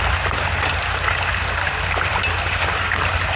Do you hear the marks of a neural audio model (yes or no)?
no